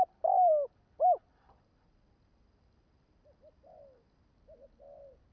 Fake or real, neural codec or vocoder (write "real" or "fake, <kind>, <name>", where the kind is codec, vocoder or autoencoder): real